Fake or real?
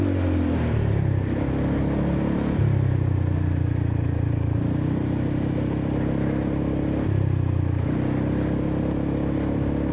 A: real